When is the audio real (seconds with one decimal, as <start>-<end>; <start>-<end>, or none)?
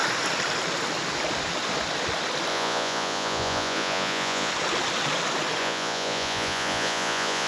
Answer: 0.0-2.5; 4.5-5.6